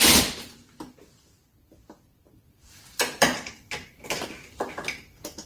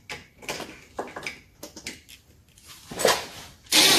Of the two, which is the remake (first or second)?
first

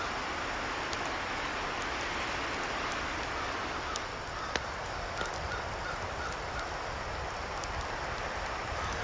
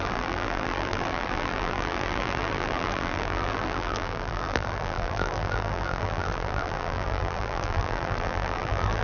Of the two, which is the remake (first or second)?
second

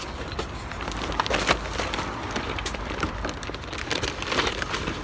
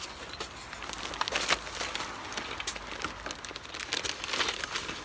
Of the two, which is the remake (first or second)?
first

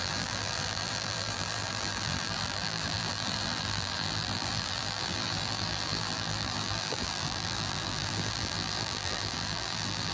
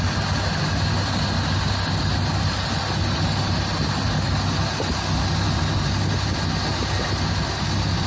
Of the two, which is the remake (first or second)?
first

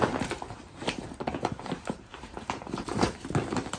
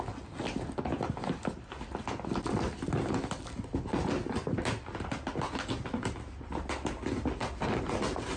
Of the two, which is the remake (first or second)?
first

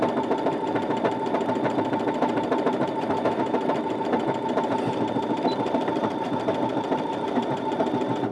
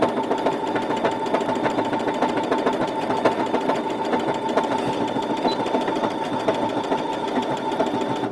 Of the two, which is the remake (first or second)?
first